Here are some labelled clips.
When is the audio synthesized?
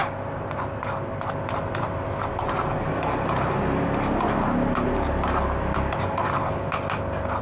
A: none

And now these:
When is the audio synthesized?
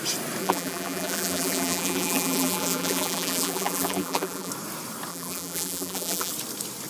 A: 0.4-4.5 (vocoder, BigVGAN v2); 5.1-6.3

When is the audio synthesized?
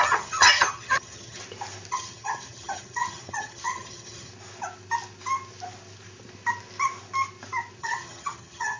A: 0.0-1.4 (vocoder, HiFi-GAN); 1.9-4.3; 7.8-8.8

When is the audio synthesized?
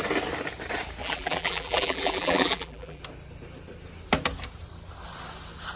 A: 1.0-3.0 (vocoder, BigVGAN v2)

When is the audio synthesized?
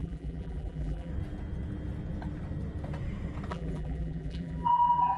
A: 0.0-1.1 (vocoder, BigVGAN v2); 3.5-5.2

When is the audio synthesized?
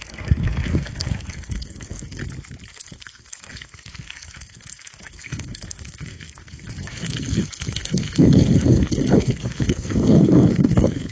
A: 0.0-2.2 (codec, SNAC); 2.7-11.1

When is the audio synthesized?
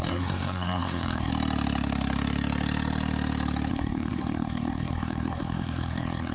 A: 0.0-1.3 (codec, SNAC); 3.7-6.3